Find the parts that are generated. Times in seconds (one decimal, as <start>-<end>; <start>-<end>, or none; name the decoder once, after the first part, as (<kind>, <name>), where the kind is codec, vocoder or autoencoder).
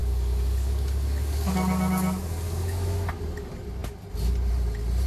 0.0-3.1 (codec, DAC)